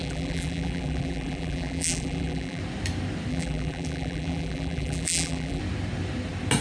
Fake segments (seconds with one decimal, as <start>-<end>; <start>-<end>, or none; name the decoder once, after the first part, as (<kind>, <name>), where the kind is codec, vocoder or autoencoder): 0.0-2.6 (vocoder, BigVGAN v2); 3.3-5.6